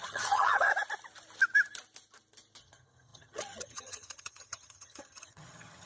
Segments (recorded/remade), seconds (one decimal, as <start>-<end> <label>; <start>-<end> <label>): 0.0-0.7 remade; 0.7-2.6 recorded; 2.6-5.9 remade